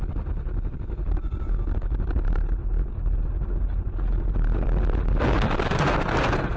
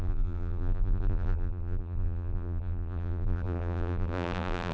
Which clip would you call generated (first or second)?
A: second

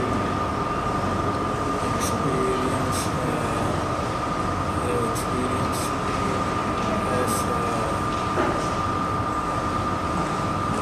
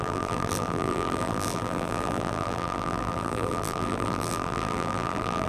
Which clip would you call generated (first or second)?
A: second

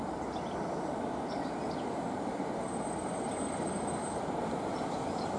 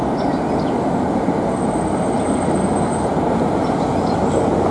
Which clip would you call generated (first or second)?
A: first